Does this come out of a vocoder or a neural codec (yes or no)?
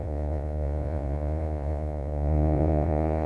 yes